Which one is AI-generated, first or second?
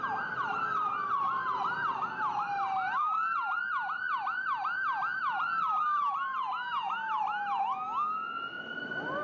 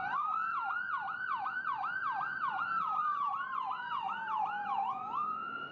second